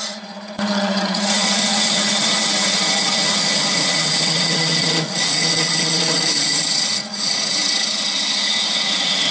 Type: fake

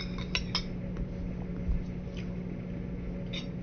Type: real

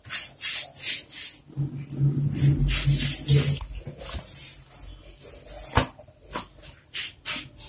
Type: real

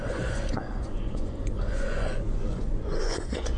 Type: fake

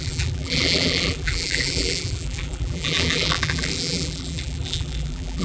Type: fake